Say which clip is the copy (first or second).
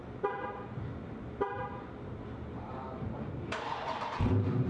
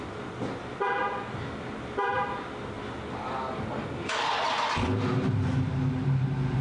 first